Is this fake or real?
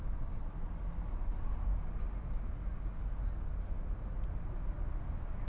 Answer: real